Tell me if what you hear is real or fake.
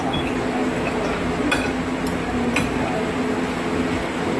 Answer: real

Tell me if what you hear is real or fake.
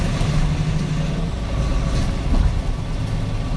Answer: real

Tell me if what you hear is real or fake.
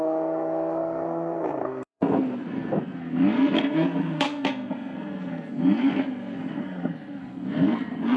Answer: fake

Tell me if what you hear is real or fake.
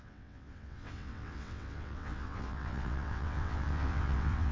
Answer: fake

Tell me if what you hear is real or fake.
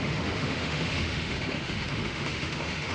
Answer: fake